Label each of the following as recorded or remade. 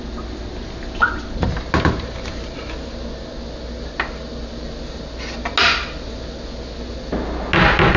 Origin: recorded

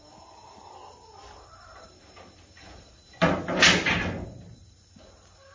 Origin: recorded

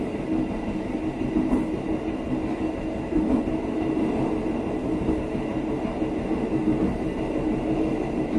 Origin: recorded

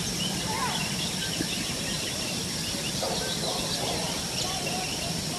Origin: recorded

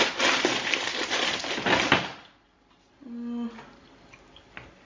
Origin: recorded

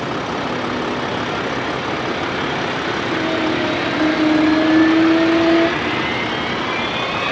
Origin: recorded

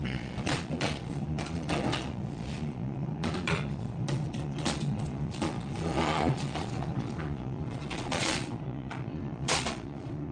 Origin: remade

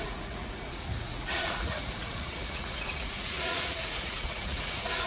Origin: remade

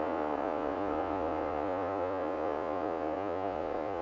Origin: remade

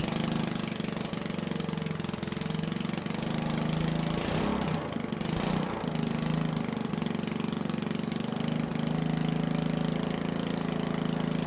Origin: recorded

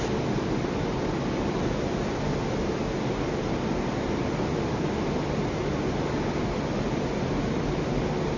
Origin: recorded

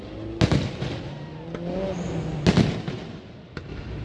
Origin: recorded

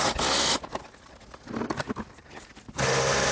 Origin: recorded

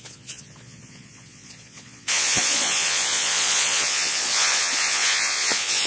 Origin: remade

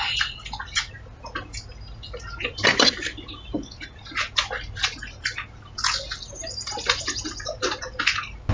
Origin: recorded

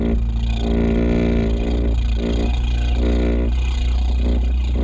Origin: recorded